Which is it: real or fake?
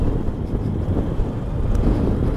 real